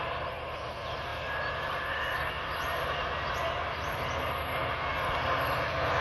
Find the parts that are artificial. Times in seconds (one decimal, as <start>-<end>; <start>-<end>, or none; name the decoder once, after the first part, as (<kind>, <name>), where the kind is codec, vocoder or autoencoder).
none